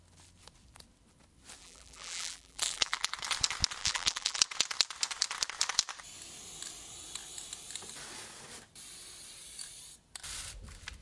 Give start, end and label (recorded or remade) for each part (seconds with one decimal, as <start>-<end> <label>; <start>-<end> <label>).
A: 0.0-1.6 recorded; 1.6-3.1 remade; 3.1-3.8 recorded; 3.8-4.4 remade; 4.4-11.0 recorded